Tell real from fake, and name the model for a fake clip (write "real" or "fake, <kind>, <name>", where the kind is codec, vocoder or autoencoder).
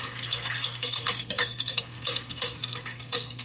fake, codec, SNAC